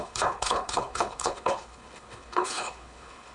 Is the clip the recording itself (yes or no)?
no